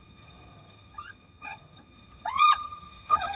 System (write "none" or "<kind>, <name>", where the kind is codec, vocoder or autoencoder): vocoder, HiFi-GAN